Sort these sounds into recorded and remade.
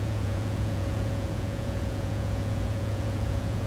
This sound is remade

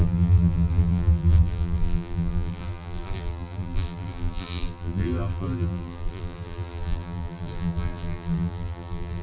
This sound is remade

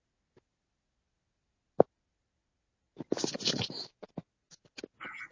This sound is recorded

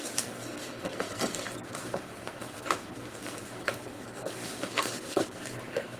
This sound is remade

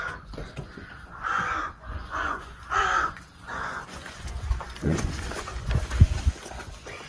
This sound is remade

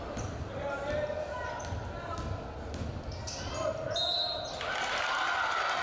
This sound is recorded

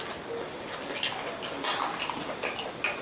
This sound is recorded